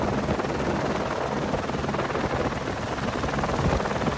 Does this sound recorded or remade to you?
recorded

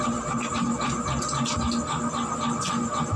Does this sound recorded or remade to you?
recorded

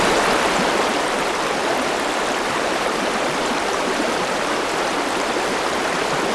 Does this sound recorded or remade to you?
remade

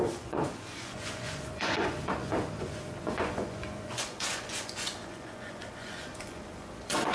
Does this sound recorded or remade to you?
remade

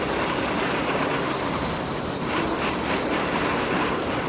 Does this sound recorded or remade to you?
remade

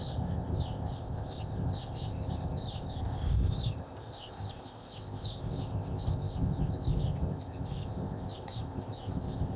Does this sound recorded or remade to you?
remade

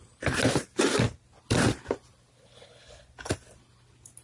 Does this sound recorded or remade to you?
recorded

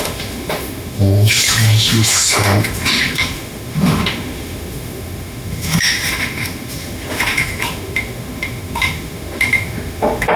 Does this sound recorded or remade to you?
remade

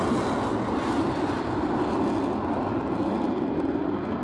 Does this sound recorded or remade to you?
recorded